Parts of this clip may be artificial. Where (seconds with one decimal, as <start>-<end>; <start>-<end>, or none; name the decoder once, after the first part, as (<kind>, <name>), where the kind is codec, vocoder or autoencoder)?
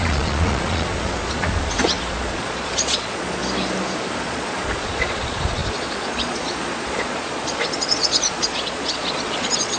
0.0-3.4 (vocoder, Vocos); 4.2-9.8